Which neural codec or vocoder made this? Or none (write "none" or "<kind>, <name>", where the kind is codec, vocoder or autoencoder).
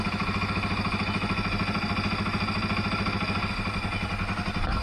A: none